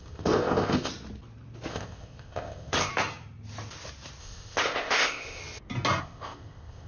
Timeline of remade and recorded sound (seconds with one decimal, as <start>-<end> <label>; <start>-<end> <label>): 0.0-0.9 remade; 0.9-1.7 recorded; 1.7-2.9 remade; 2.9-4.2 recorded; 4.2-5.4 remade; 5.4-6.0 recorded; 6.0-6.9 remade